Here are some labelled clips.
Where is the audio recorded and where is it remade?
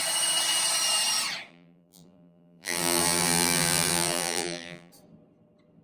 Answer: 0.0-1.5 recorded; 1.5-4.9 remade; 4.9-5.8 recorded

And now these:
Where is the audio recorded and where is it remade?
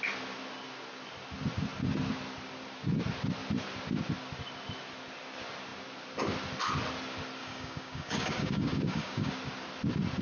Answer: 0.0-7.4 recorded; 7.4-9.3 remade; 9.3-10.2 recorded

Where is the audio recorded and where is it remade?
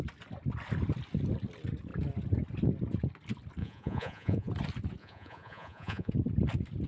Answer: 0.0-3.6 recorded; 3.6-4.5 remade; 4.5-5.0 recorded; 5.0-6.1 remade; 6.1-6.9 recorded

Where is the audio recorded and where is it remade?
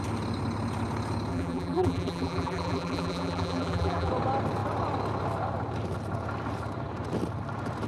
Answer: 0.0-1.3 recorded; 1.3-4.1 remade; 4.1-7.9 recorded